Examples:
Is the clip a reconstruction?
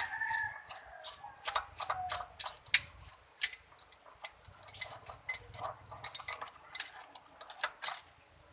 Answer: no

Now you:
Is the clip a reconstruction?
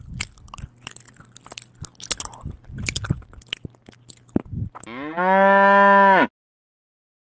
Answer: no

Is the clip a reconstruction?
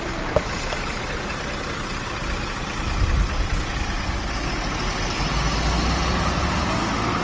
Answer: no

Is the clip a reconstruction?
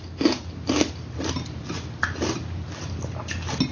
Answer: no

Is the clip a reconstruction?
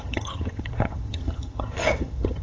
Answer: yes